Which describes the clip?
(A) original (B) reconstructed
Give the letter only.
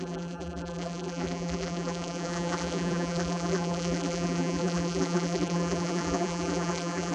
B